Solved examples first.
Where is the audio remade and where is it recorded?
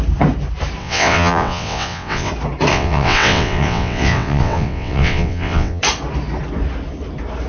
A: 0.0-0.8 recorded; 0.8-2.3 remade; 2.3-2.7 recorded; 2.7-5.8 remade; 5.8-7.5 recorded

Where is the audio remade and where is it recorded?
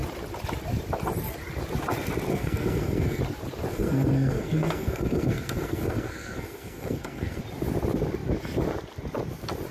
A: 0.0-2.3 recorded; 2.3-3.2 remade; 3.2-3.7 recorded; 3.7-7.4 remade; 7.4-9.7 recorded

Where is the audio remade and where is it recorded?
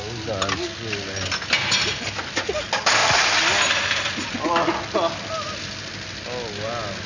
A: 0.0-7.1 recorded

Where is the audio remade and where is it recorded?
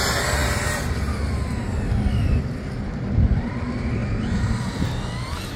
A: 0.0-4.0 recorded; 4.0-4.9 remade; 4.9-5.6 recorded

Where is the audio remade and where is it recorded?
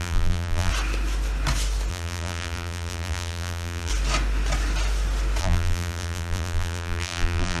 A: 0.0-0.7 remade; 0.7-1.9 recorded; 1.9-3.9 remade; 3.9-5.4 recorded; 5.4-7.6 remade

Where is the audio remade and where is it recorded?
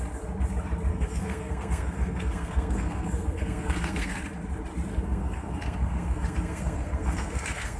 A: 0.0-0.9 recorded; 0.9-4.2 remade; 4.2-4.9 recorded; 4.9-7.8 remade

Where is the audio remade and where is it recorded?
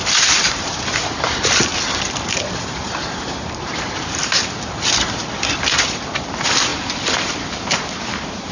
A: 0.0-1.7 remade; 1.7-2.6 recorded; 2.6-4.4 remade; 4.4-5.0 recorded; 5.0-8.5 remade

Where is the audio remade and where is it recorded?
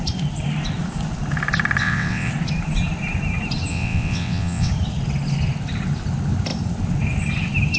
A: 0.0-1.8 recorded; 1.8-2.3 remade; 2.3-3.7 recorded; 3.7-4.7 remade; 4.7-7.8 recorded